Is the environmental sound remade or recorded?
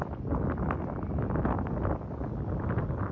recorded